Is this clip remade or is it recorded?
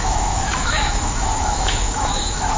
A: remade